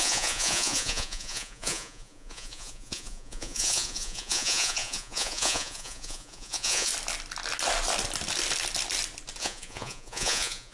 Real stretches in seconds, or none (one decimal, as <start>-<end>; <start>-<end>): 6.9-9.4